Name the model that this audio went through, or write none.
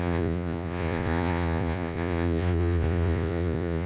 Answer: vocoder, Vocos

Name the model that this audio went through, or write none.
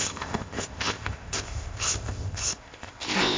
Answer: codec, ZipCodec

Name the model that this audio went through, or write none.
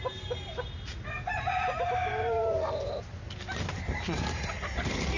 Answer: none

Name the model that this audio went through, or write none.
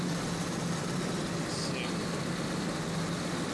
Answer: none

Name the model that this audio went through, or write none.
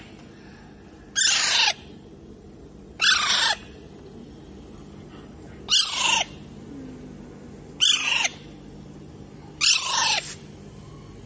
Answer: none